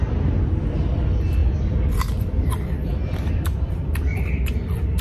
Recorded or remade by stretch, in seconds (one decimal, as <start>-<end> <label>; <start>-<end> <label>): 0.0-5.0 recorded